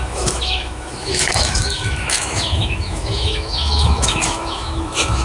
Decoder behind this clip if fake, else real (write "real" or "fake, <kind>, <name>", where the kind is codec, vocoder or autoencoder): fake, autoencoder, DAC-VAE